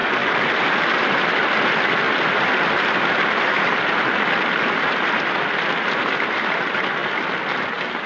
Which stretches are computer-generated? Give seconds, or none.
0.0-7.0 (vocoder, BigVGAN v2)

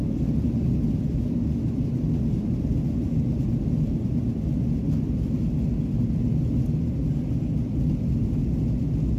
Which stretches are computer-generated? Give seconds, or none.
none